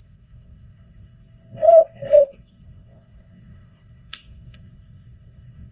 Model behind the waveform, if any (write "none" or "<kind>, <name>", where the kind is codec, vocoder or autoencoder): codec, SNAC